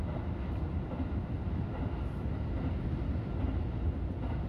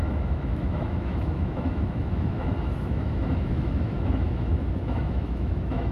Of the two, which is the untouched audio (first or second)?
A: first